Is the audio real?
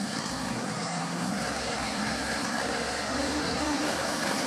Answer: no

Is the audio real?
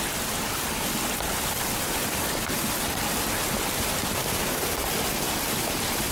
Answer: yes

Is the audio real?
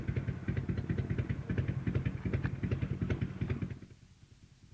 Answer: yes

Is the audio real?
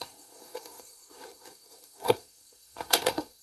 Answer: no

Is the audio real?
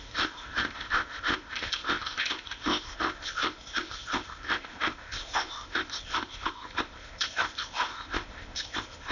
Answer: no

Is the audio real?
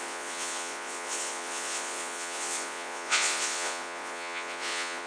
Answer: no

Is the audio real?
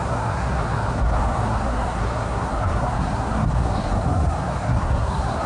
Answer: no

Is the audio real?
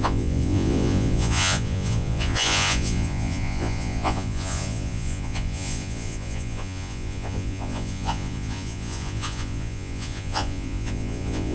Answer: no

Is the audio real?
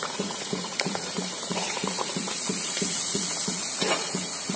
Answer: no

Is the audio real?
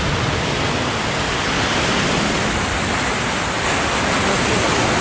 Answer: yes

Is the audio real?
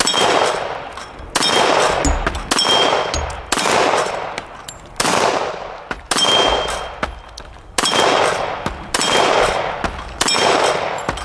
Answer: yes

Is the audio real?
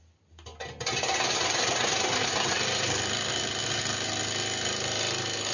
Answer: yes